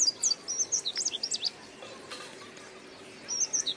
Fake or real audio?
real